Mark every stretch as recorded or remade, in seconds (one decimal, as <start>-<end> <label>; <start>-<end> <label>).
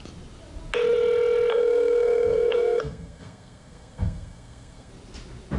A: 0.0-1.5 recorded; 1.5-4.9 remade; 4.9-5.6 recorded